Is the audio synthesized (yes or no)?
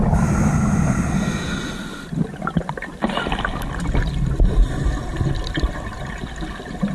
no